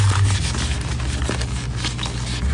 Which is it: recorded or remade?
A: recorded